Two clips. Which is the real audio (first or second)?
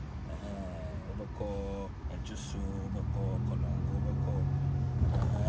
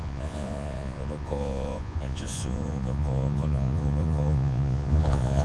first